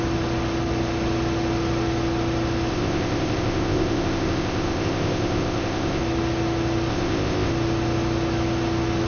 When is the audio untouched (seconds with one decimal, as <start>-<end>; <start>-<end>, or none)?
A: 0.0-2.7; 6.0-6.9; 7.5-9.1